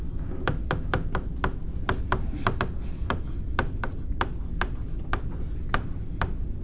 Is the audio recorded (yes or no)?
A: yes